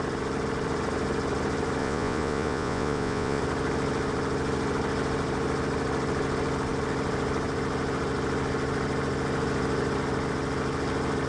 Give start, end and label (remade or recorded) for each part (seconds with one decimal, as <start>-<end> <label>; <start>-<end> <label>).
0.0-1.8 recorded; 1.8-3.4 remade; 3.4-11.3 recorded